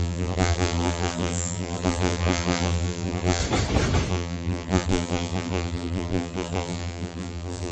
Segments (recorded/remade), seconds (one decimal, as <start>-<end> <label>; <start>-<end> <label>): 0.0-3.4 remade; 3.4-4.1 recorded; 4.1-7.7 remade